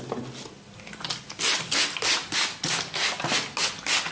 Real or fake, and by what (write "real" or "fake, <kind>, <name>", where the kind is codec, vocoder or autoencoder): real